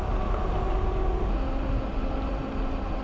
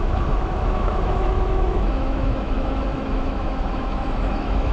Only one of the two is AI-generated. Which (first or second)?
second